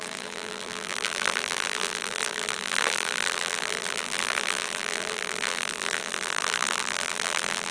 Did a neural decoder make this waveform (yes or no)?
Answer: yes